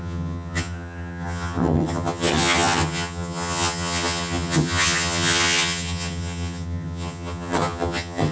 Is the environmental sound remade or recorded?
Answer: remade